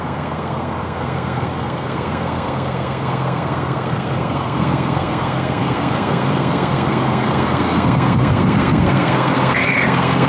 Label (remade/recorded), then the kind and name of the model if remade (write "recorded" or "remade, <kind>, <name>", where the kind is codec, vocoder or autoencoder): remade, codec, SNAC